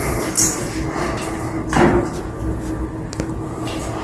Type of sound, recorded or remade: recorded